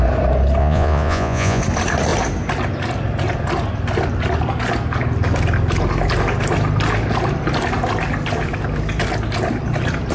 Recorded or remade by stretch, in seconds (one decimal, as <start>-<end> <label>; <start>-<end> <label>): 0.0-0.6 recorded; 0.6-1.6 remade; 1.6-10.1 recorded